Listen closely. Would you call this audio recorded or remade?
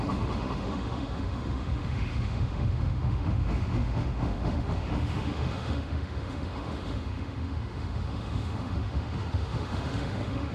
remade